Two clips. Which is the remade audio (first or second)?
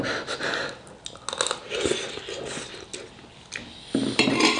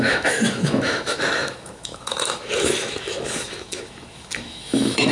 second